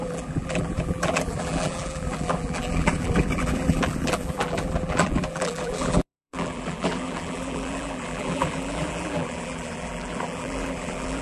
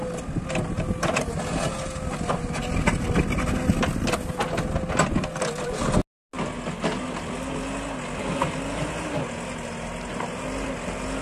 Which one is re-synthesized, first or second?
first